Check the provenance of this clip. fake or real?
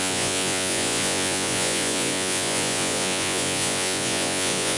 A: fake